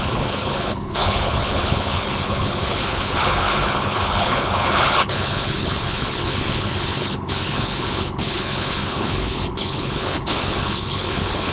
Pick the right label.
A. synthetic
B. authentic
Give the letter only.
A